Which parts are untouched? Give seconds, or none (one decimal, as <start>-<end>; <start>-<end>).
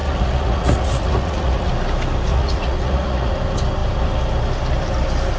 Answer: 1.7-2.3; 3.3-5.4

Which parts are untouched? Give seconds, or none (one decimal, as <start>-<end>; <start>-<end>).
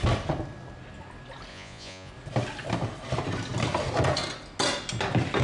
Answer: 0.0-1.5; 2.1-5.4